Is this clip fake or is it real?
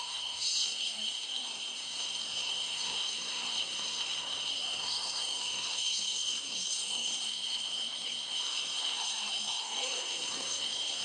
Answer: fake